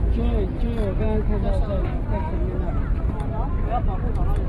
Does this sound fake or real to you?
real